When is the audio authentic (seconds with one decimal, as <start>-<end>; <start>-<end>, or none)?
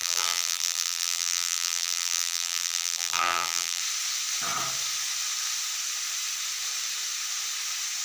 3.8-8.0